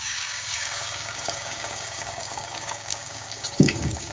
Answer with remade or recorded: remade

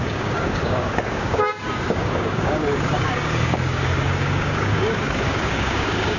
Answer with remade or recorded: remade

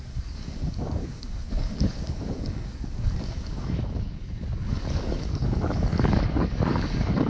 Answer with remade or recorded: remade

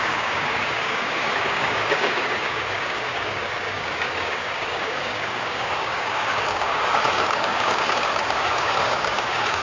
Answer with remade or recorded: remade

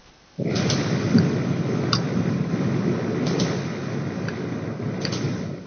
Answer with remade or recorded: recorded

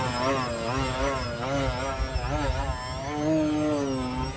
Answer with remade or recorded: recorded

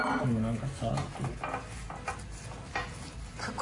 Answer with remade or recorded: recorded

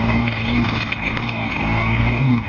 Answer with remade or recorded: remade